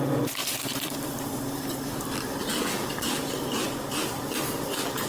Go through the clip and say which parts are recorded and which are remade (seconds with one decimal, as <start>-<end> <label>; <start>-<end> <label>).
0.0-0.4 recorded; 0.4-3.5 remade; 3.5-5.1 recorded